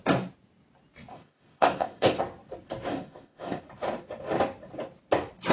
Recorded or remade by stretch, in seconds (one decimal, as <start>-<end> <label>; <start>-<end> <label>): 0.0-1.1 recorded; 1.1-2.2 remade; 2.2-2.9 recorded; 2.9-3.6 remade; 3.6-5.5 recorded